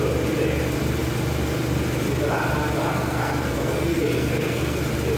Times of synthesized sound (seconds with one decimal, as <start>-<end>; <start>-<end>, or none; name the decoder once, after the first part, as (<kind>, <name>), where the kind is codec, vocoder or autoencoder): 2.8-4.8 (codec, SNAC)